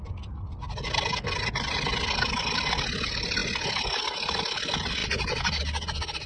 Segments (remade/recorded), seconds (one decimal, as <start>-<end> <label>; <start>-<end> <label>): 0.0-6.3 recorded